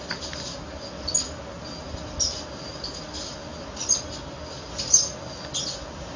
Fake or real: real